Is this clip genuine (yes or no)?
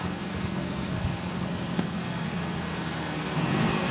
no